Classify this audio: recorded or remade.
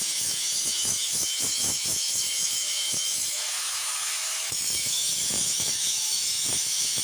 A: remade